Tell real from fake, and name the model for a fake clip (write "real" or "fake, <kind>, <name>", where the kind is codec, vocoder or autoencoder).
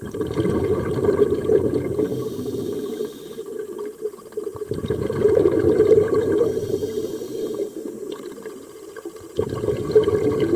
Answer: fake, vocoder, BigVGAN v2